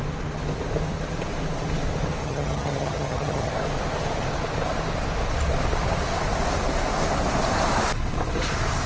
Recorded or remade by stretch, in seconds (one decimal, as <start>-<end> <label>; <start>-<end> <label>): 0.0-2.2 recorded; 2.2-3.5 remade; 3.5-8.9 recorded